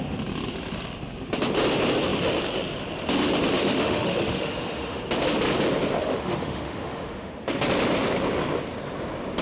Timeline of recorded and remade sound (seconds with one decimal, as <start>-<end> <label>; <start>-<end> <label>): 0.0-3.6 recorded; 3.6-5.0 remade; 5.0-6.0 recorded; 6.0-7.6 remade; 7.6-9.4 recorded